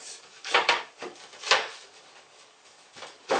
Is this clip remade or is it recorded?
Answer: remade